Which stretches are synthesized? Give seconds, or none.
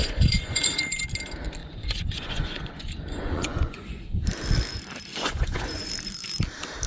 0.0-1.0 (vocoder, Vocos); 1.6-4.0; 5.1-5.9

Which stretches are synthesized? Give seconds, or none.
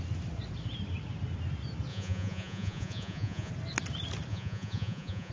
1.9-3.5 (vocoder, Vocos); 4.3-5.3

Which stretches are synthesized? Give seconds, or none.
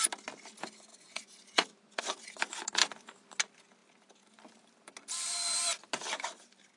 0.9-2.0 (vocoder, Vocos)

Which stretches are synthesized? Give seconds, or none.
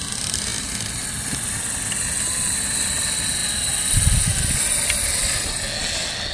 none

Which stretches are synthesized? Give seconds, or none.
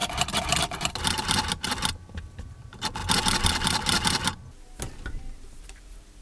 none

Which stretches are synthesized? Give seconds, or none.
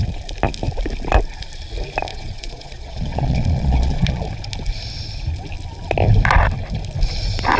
2.1-4.3 (vocoder, Vocos)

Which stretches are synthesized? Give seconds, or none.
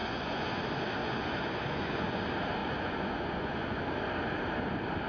0.0-0.6 (vocoder, Vocos); 1.0-2.2; 2.6-3.8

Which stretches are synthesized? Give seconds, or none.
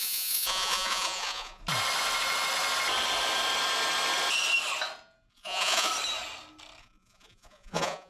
0.0-1.6 (vocoder, Vocos); 5.3-5.9; 6.8-8.1